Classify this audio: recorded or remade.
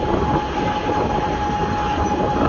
recorded